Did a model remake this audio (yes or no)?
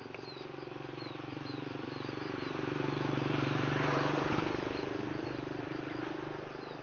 yes